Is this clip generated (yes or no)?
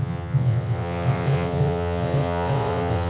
yes